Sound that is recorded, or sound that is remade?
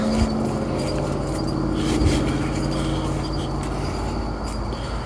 recorded